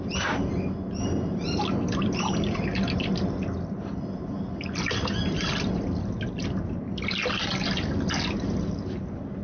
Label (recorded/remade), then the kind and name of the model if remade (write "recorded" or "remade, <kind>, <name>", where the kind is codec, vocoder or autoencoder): recorded